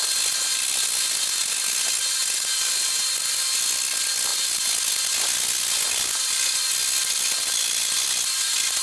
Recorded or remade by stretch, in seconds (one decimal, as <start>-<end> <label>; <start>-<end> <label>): 0.0-8.8 recorded